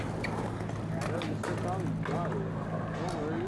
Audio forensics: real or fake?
real